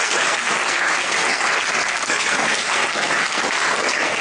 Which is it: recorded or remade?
remade